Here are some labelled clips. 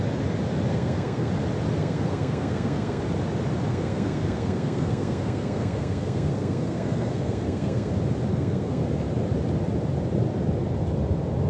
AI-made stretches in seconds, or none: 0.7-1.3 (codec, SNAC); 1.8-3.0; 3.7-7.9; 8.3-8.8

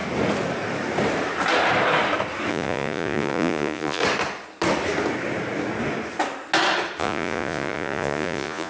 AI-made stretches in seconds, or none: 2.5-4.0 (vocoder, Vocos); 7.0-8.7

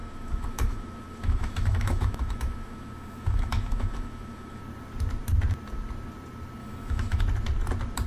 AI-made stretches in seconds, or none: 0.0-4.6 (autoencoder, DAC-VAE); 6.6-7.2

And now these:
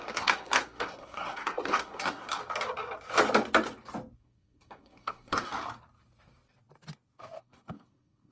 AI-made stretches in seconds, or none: 0.0-2.4 (codec, SNAC); 4.2-5.5; 7.4-8.3

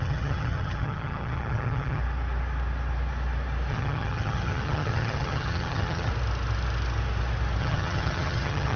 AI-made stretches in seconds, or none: 0.0-2.0 (vocoder, HiFi-GAN); 3.7-6.1; 7.6-8.8

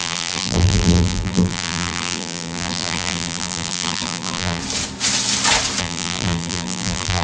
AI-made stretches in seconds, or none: 0.0-4.6 (vocoder, BigVGAN v2); 5.8-7.2

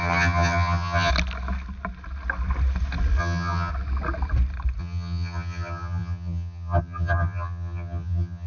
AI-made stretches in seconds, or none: 0.0-1.1 (vocoder, HiFi-GAN); 3.2-3.7; 4.8-8.5

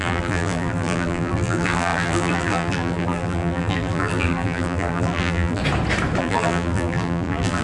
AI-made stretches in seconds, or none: 0.0-5.6 (vocoder, BigVGAN v2); 6.2-7.6